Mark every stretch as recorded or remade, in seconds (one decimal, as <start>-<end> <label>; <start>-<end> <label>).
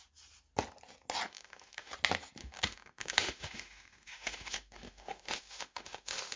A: 0.0-1.3 recorded; 1.3-1.9 remade; 1.9-2.4 recorded; 2.4-6.4 remade